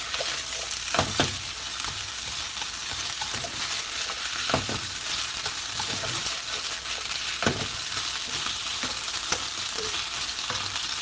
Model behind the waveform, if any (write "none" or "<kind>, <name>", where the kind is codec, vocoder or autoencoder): vocoder, BigVGAN v2